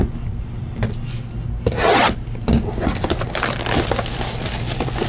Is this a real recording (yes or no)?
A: yes